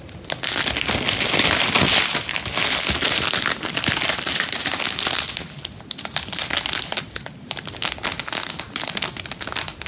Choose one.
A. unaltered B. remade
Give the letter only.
A